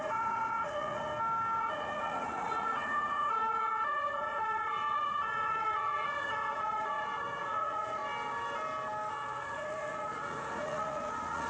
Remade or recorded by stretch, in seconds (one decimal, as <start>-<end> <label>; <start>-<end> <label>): 0.0-1.1 remade; 1.1-1.6 recorded; 1.6-8.0 remade; 8.0-9.1 recorded; 9.1-11.5 remade